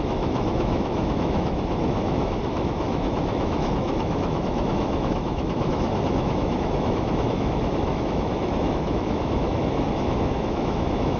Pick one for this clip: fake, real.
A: fake